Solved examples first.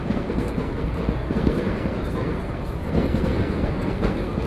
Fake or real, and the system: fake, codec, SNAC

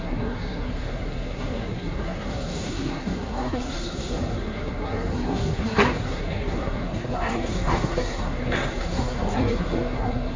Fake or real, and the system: fake, codec, SNAC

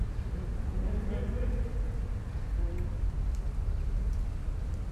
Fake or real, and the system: real